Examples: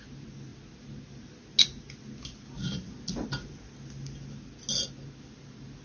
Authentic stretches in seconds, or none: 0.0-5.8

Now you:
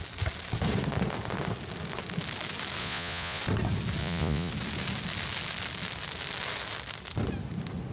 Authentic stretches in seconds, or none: 0.0-2.8; 3.4-4.0; 4.5-7.9

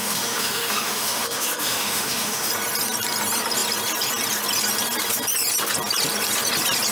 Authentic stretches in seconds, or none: 2.5-6.9

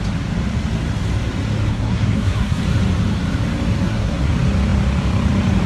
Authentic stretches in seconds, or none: 0.0-1.7; 2.6-3.8; 4.3-5.7